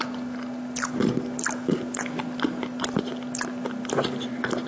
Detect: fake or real real